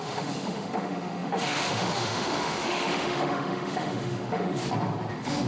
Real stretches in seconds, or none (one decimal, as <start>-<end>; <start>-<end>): 4.6-5.1